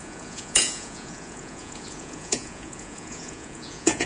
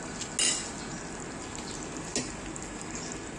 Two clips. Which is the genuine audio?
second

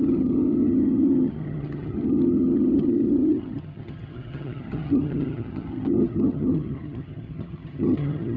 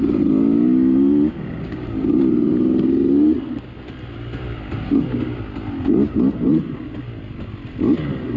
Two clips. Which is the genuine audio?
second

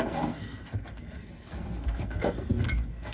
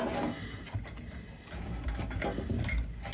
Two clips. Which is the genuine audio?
second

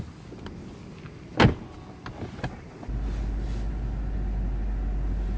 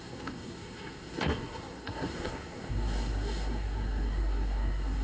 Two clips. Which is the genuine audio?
first